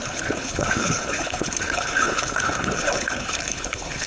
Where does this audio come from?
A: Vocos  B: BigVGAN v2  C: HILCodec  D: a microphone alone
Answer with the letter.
C